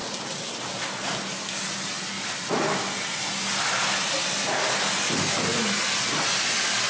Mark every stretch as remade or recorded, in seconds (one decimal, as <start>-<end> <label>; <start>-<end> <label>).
0.0-6.9 recorded